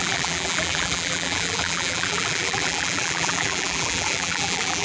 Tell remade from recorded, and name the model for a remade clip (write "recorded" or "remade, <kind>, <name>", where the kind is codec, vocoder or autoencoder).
remade, vocoder, BigVGAN v2